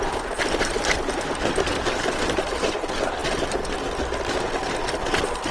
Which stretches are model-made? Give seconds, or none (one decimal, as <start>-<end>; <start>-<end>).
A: none